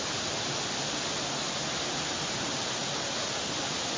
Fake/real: real